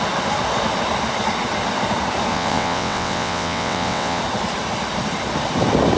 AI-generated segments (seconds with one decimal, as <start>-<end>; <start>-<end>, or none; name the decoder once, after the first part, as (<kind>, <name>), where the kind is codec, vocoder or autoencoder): 2.3-4.2 (vocoder, WaveNeXt)